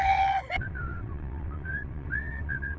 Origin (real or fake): fake